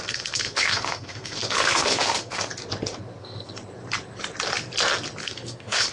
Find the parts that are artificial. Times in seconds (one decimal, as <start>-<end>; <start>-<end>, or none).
0.0-2.5; 3.2-3.6; 5.2-5.9